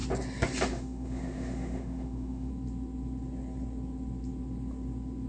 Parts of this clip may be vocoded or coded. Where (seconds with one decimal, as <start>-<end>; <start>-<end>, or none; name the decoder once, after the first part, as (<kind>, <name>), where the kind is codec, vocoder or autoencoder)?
0.7-2.5 (autoencoder, DAC-VAE)